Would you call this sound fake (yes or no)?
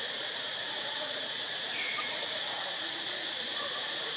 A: yes